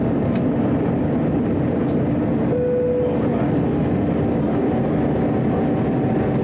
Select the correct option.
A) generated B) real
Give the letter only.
B